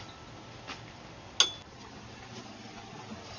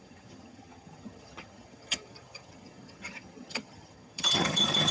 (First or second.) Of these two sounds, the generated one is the second